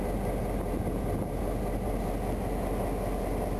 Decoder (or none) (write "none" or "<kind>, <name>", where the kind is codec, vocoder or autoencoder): none